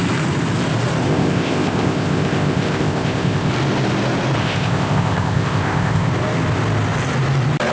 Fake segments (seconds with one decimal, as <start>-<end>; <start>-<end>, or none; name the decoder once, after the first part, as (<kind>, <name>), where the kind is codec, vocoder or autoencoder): 1.1-3.5 (codec, ZipCodec); 4.4-6.1